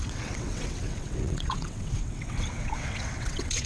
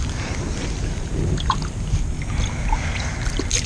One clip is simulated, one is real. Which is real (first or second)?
second